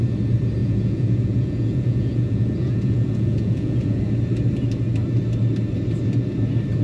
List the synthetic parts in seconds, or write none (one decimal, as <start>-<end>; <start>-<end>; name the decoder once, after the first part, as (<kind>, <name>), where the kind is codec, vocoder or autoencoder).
0.6-4.0 (vocoder, Vocos)